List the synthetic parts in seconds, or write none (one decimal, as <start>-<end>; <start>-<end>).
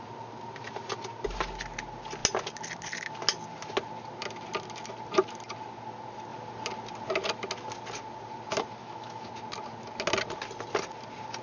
8.8-9.3